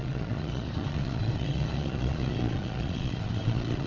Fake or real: fake